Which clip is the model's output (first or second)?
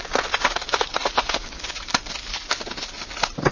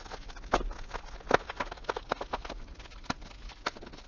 first